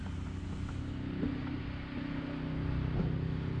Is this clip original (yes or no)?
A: yes